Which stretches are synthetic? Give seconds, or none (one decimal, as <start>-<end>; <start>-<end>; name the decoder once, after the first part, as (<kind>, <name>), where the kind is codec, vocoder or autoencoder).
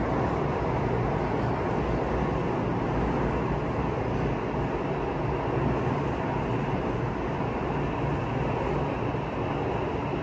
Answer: none